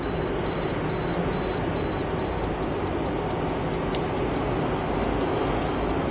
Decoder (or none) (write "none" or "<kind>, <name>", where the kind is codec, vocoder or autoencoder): none